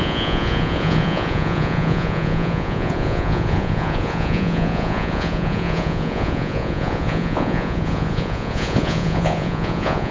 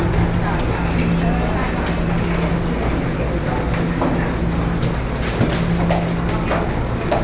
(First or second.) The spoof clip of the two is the first